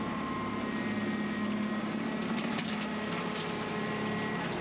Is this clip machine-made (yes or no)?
no